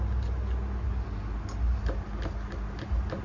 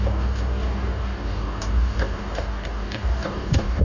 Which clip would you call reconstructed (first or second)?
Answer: second